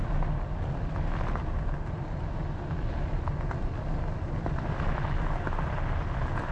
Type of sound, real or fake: real